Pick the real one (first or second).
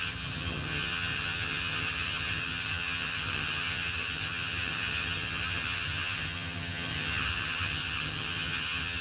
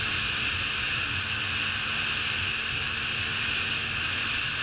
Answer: second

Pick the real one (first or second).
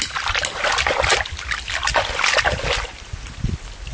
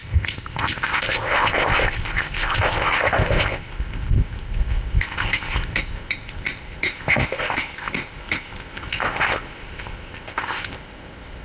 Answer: first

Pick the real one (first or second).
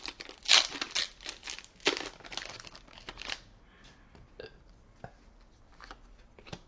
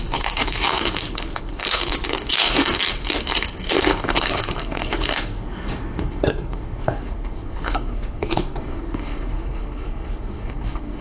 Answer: first